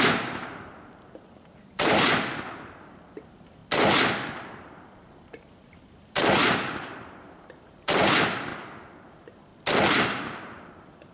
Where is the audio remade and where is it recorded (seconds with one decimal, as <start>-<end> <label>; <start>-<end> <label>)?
0.0-3.6 remade; 3.6-4.3 recorded; 4.3-8.5 remade; 8.5-9.1 recorded; 9.1-9.5 remade; 9.5-10.7 recorded; 10.7-11.1 remade